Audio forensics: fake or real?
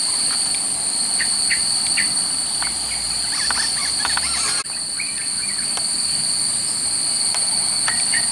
real